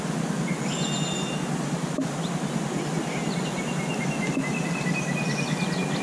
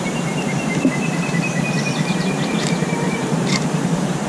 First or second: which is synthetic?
second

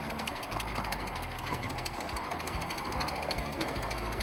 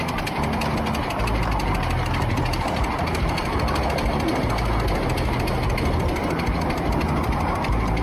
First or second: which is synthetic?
first